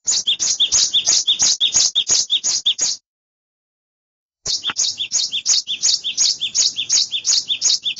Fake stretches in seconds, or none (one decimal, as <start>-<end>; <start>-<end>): 0.0-0.5; 2.3-5.3